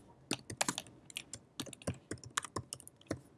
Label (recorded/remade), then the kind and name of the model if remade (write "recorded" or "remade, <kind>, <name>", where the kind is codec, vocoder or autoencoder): recorded